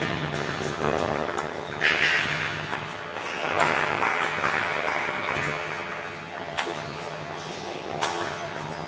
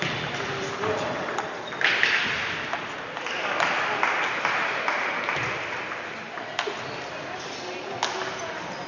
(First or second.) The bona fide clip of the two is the second